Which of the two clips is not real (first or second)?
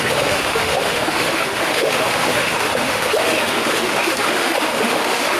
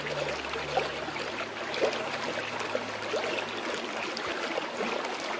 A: first